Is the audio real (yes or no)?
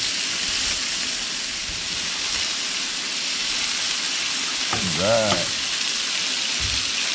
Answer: yes